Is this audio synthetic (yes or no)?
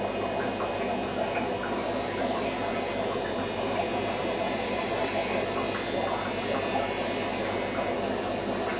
no